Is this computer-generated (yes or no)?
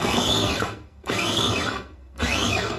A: yes